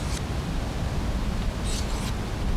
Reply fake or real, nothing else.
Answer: real